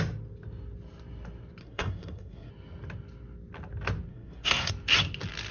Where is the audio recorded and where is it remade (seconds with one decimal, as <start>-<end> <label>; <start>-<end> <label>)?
0.0-1.6 recorded; 1.6-2.5 remade; 2.5-4.1 recorded; 4.1-4.7 remade; 4.7-5.5 recorded

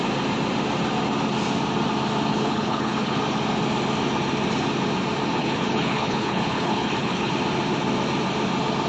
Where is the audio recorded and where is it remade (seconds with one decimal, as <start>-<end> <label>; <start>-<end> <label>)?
0.0-2.3 recorded; 2.3-3.2 remade; 3.2-5.4 recorded; 5.4-7.3 remade; 7.3-8.9 recorded

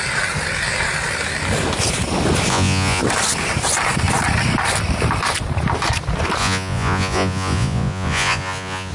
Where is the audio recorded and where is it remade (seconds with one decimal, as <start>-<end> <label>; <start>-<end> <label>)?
0.0-2.5 recorded; 2.5-3.0 remade; 3.0-6.4 recorded; 6.4-8.9 remade